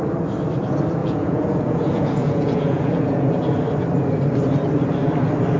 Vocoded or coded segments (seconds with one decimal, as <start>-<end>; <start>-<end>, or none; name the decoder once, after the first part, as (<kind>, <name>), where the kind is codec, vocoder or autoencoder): 1.0-3.3 (vocoder, Vocos)